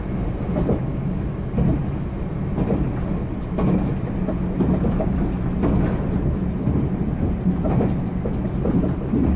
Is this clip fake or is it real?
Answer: real